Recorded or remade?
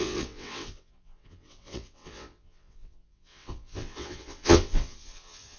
remade